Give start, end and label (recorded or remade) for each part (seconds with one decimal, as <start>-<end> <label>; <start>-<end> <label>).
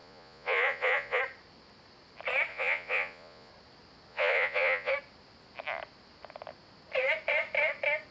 0.0-1.2 remade; 1.2-2.5 recorded; 2.5-3.5 remade; 3.5-4.1 recorded; 4.1-4.9 remade; 4.9-8.1 recorded